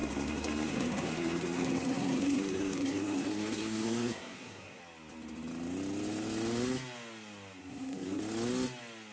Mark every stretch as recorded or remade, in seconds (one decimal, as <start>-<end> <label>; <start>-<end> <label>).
0.0-4.8 remade; 4.8-7.6 recorded; 7.6-8.2 remade; 8.2-9.1 recorded